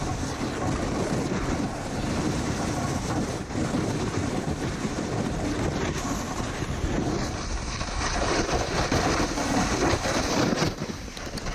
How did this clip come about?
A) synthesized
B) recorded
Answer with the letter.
B